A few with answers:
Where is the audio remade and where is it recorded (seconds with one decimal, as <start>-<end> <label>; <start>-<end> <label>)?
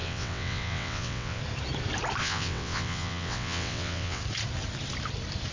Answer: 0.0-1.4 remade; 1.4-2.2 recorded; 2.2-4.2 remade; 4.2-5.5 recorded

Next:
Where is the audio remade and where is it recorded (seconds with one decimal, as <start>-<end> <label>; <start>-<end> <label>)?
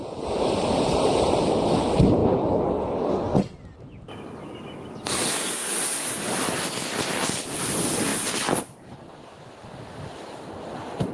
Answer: 0.0-11.1 recorded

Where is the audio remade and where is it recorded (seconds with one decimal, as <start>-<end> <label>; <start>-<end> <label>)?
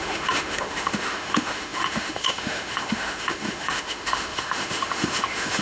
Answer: 0.0-5.6 remade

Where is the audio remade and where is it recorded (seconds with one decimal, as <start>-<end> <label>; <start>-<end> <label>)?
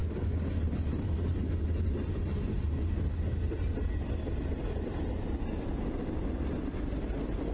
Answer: 0.0-7.5 recorded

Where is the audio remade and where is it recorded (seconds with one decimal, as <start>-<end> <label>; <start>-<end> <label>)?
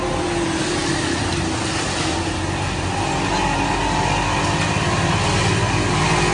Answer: 0.0-6.3 recorded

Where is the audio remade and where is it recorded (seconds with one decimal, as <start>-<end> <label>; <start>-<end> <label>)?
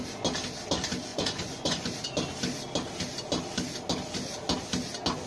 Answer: 0.0-1.1 recorded; 1.1-1.9 remade; 1.9-5.3 recorded